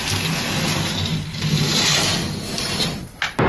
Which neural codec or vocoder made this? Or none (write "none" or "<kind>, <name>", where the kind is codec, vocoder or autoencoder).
none